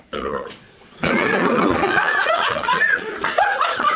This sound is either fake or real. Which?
fake